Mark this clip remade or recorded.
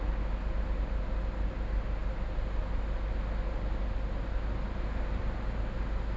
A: recorded